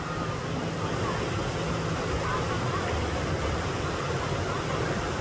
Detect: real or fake real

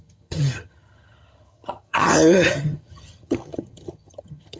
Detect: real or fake fake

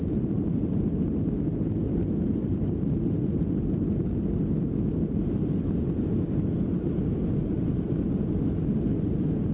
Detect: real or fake real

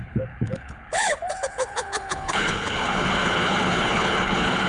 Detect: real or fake fake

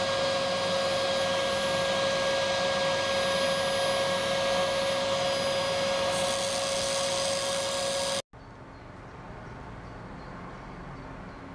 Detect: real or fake real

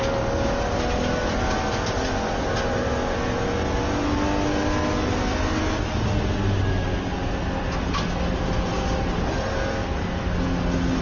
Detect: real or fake real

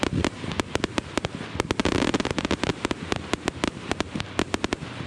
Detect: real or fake real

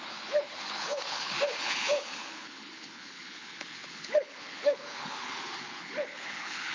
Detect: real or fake fake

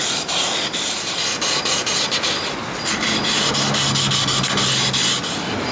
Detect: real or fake real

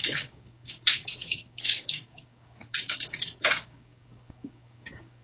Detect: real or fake fake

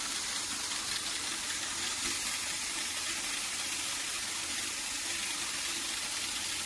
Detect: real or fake real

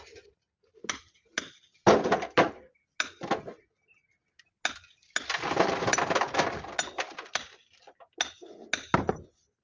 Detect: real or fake real